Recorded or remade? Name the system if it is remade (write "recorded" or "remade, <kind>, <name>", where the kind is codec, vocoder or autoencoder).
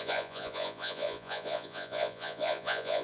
remade, vocoder, Vocos